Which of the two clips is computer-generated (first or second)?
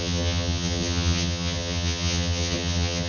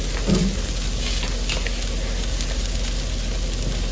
first